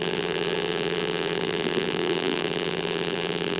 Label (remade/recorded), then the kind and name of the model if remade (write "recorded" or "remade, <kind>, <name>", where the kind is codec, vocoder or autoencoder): remade, vocoder, BigVGAN v2